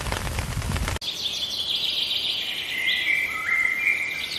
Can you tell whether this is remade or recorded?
recorded